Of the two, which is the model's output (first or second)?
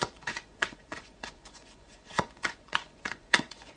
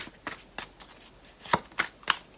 first